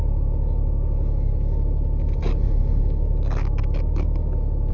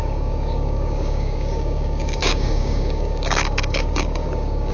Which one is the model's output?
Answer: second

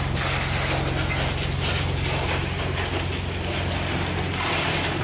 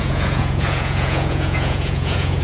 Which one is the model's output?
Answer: second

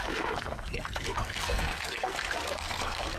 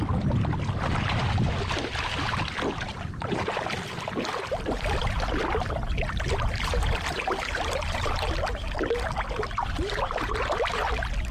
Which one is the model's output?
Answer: first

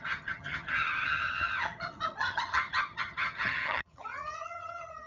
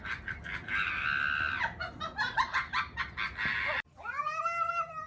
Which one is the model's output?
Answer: first